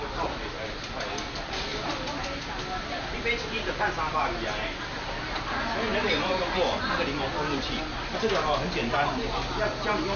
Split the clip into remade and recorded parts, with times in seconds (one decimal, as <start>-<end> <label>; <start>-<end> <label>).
0.0-10.2 recorded